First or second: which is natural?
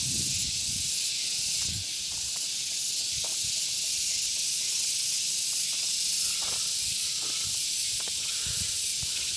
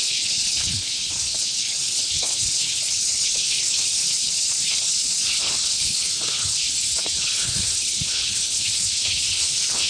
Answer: first